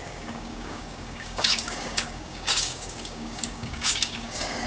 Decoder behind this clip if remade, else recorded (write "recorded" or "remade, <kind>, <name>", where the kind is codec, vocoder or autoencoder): remade, codec, DAC